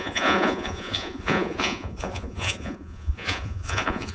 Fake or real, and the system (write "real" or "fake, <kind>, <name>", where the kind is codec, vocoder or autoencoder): fake, vocoder, Vocos